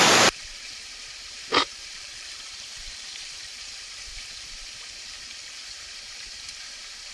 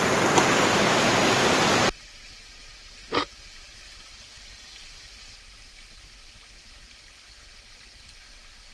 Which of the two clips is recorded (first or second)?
second